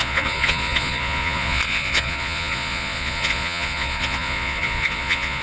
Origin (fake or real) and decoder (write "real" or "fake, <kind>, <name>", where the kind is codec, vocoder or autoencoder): fake, vocoder, Vocos